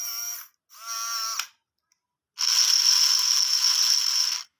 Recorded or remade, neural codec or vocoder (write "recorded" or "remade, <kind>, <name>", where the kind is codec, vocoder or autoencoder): recorded